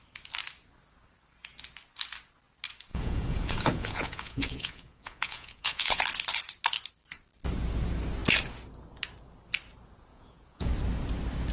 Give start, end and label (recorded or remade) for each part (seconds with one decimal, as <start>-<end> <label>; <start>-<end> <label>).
0.0-2.9 recorded; 2.9-6.0 remade; 6.0-10.1 recorded; 10.1-10.7 remade; 10.7-11.5 recorded

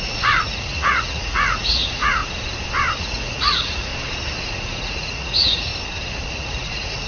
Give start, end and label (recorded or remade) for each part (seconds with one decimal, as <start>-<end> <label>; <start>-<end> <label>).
0.0-2.2 remade; 2.2-3.0 recorded; 3.0-3.9 remade; 3.9-4.5 recorded; 4.5-5.7 remade; 5.7-6.3 recorded; 6.3-7.1 remade

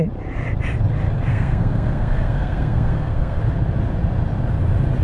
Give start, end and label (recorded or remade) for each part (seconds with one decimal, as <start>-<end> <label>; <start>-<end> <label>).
0.0-1.3 recorded; 1.3-3.4 remade; 3.4-5.0 recorded